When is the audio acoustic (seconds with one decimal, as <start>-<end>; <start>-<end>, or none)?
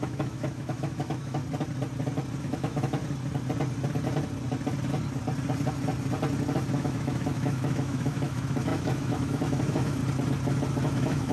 1.4-2.4; 3.0-6.7; 10.0-10.8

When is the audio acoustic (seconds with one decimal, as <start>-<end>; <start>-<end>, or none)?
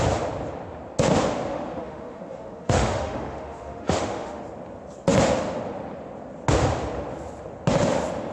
0.0-1.5; 4.4-8.3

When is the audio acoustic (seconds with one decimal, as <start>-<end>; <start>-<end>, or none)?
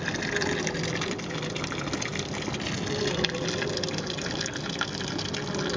0.0-5.8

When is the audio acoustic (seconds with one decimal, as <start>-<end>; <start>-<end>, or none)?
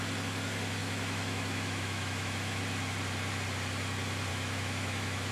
0.0-0.8; 2.6-4.3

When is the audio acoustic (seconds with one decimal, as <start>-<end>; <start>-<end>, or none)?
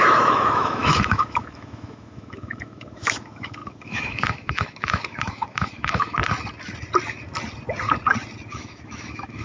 6.2-8.5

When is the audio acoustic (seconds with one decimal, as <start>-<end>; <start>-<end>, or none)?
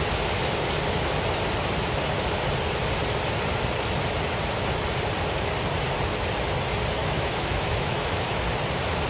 0.0-7.0; 8.4-9.1